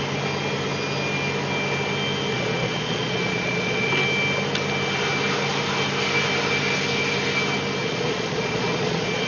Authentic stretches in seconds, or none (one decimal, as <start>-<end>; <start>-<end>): 0.0-2.3; 3.9-7.8